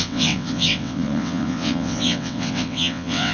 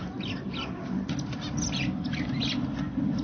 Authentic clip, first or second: second